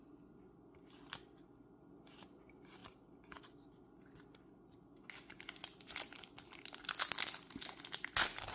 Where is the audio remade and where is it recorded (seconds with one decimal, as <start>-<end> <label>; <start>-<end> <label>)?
0.0-8.5 recorded